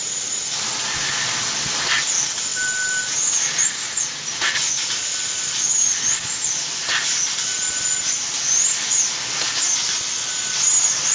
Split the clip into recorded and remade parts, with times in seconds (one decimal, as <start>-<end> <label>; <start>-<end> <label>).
0.0-11.1 recorded

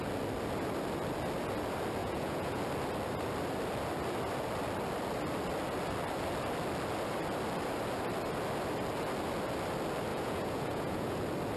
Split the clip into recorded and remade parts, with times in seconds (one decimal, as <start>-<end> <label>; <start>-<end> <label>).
0.0-2.0 recorded; 2.0-2.6 remade; 2.6-10.1 recorded; 10.1-11.2 remade; 11.2-11.6 recorded

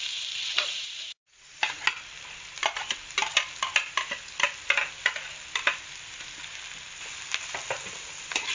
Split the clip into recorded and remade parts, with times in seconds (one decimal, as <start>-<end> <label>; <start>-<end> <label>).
0.0-0.5 recorded; 0.5-1.5 remade; 1.5-8.5 recorded

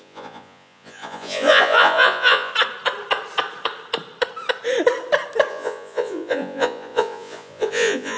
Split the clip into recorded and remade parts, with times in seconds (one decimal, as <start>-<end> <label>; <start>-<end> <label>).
0.0-2.5 remade; 2.5-5.5 recorded; 5.5-8.2 remade

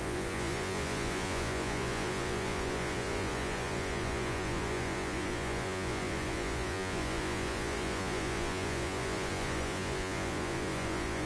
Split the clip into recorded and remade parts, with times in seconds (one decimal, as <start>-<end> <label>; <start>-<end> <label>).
0.0-11.3 remade

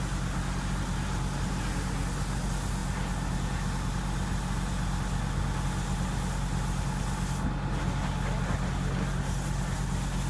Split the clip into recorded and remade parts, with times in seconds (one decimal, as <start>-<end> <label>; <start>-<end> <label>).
0.0-10.3 recorded

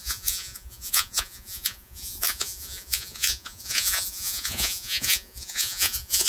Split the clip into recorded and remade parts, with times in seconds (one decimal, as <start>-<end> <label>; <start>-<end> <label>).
0.0-6.3 remade